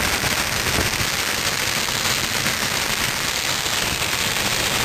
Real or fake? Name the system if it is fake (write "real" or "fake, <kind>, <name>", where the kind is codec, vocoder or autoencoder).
real